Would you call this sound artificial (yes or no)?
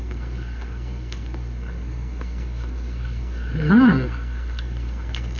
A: yes